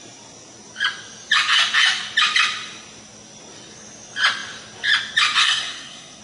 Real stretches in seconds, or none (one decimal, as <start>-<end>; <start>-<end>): 0.0-5.4